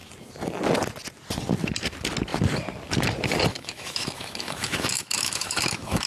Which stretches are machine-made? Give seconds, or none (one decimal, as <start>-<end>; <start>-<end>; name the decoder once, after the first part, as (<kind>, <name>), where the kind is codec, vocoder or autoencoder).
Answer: 3.5-6.1 (autoencoder, DAC-VAE)